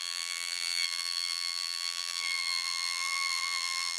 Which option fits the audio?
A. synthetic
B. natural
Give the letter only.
A